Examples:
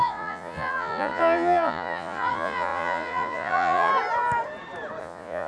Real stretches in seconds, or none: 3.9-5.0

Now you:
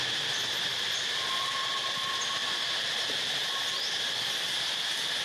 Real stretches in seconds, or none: 0.0-5.2